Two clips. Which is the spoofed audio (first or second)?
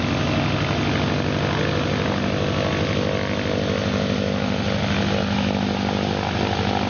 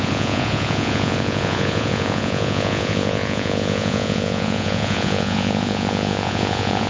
second